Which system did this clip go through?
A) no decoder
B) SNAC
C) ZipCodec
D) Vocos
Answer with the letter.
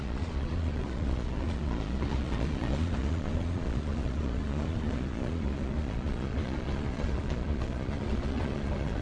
D